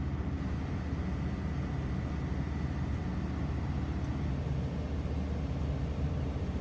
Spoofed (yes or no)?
no